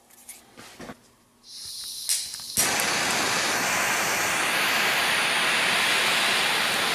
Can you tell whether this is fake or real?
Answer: real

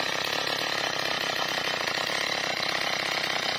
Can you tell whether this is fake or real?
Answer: real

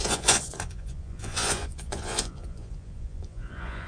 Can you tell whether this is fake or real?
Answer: fake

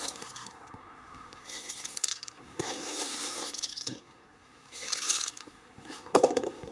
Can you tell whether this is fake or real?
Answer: fake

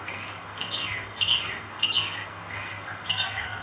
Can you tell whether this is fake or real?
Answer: fake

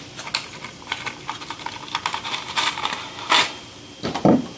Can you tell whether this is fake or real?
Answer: real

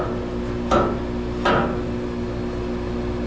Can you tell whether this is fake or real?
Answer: real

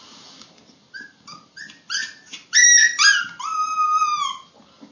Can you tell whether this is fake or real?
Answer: real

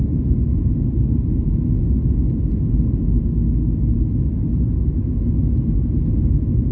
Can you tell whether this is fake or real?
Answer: real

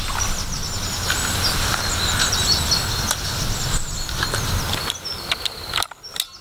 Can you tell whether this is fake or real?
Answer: real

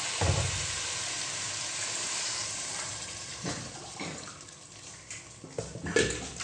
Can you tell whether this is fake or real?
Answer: fake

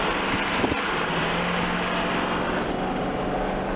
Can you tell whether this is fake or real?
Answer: real